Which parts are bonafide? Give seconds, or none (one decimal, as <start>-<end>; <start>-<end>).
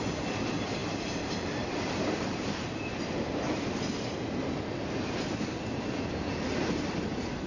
0.0-0.8; 3.6-7.5